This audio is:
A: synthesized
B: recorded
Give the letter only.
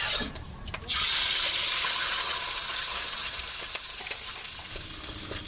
B